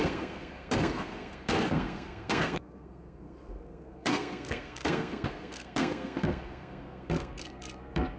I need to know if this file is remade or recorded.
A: remade